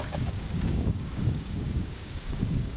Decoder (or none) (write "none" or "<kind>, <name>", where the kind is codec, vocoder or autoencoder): codec, DAC